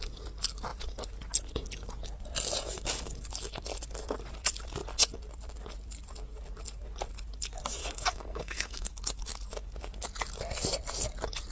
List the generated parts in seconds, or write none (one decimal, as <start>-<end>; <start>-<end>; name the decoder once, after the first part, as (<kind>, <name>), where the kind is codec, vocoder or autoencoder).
7.8-8.9 (codec, SNAC)